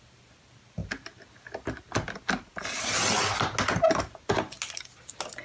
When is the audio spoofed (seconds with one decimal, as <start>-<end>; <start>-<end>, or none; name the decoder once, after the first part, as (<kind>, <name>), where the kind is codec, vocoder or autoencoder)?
none